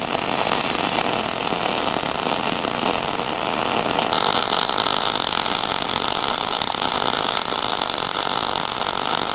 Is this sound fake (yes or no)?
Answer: no